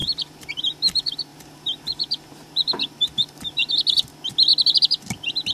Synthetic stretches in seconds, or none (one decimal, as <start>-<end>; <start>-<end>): 0.0-0.5; 1.3-3.7; 4.5-5.0